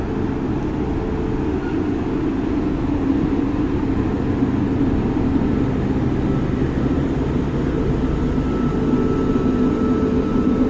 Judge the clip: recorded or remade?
recorded